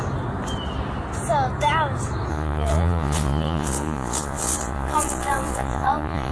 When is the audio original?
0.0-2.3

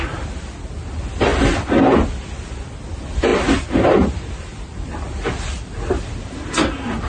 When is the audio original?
0.0-3.3; 6.2-7.1

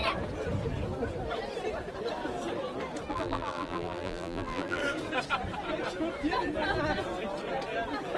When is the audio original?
0.0-3.1; 4.8-8.2

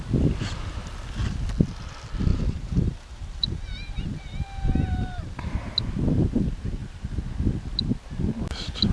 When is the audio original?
0.0-2.3; 5.6-8.9